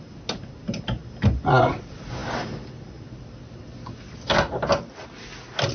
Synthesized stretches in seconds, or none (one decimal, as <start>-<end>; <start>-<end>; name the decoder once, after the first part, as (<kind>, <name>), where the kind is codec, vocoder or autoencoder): none